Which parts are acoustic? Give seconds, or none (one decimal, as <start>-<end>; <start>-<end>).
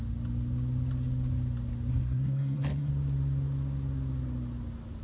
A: 0.0-1.9; 2.9-5.0